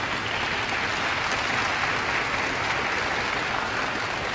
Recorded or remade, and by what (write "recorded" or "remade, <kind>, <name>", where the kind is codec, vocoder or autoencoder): recorded